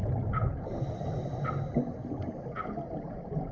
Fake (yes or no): no